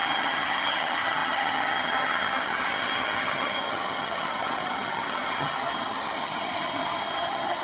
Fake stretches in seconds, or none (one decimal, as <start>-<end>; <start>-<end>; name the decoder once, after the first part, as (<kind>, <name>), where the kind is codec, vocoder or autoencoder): 0.0-7.6 (vocoder, HiFi-GAN)